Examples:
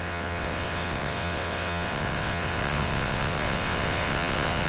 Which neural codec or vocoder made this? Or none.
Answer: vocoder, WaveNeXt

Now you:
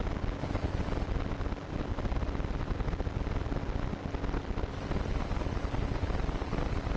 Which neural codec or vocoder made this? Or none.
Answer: none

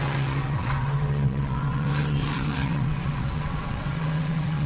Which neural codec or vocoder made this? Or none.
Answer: vocoder, WaveNeXt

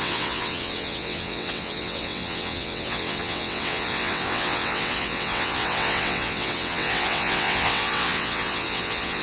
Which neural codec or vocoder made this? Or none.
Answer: vocoder, WaveNeXt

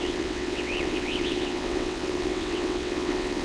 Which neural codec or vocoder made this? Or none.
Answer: vocoder, WaveNeXt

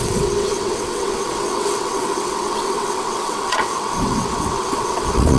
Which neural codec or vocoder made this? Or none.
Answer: vocoder, WaveNeXt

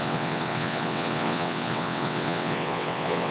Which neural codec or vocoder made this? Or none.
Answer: vocoder, WaveNeXt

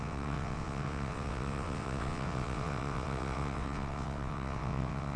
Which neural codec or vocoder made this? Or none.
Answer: vocoder, WaveNeXt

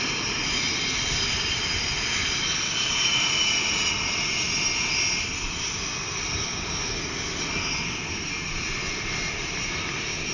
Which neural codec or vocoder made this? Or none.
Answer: none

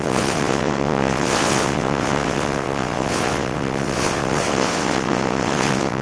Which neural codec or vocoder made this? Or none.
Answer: vocoder, WaveNeXt